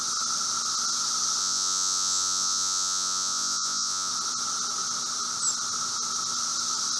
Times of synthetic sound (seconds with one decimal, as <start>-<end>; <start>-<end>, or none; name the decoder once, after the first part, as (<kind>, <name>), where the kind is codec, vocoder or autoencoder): 1.4-4.1 (vocoder, Vocos)